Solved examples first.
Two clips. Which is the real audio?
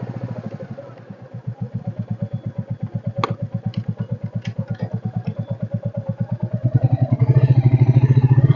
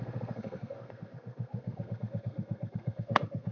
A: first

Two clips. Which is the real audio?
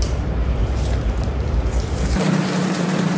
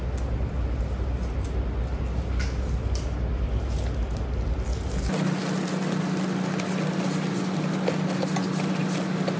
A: second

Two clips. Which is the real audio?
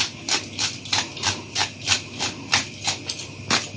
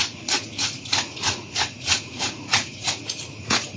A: first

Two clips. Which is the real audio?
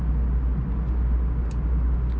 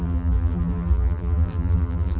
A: first